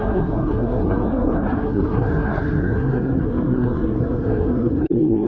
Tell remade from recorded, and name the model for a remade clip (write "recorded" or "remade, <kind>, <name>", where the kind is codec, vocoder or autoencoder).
remade, codec, SNAC